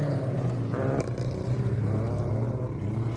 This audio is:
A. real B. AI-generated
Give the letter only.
B